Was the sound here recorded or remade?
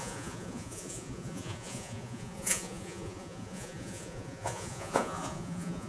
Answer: remade